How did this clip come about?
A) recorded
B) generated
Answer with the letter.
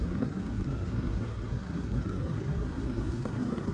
B